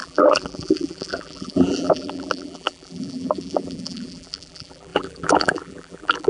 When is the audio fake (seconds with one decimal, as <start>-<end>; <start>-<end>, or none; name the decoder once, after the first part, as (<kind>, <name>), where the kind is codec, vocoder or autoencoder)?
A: 0.0-6.3 (vocoder, BigVGAN v2)